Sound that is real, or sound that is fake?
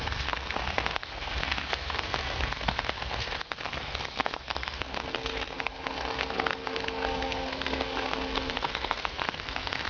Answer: fake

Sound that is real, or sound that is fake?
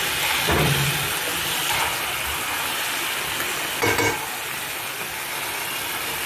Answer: real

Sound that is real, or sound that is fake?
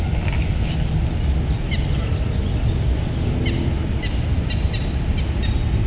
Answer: real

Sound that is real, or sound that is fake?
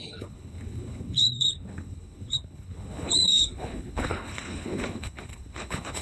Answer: fake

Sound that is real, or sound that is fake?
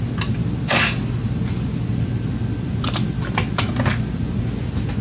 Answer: real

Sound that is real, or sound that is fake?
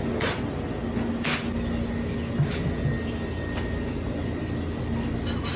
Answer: real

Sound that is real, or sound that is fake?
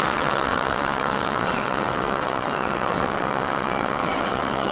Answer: fake